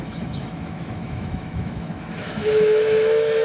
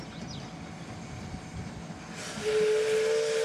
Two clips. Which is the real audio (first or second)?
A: second